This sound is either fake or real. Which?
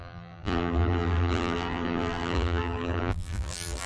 fake